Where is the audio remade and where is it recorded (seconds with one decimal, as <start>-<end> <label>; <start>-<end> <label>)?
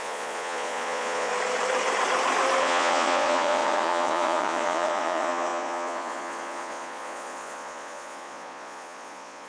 0.0-1.3 remade; 1.3-2.6 recorded; 2.6-9.5 remade